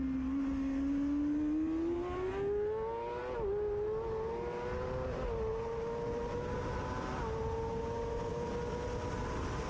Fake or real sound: real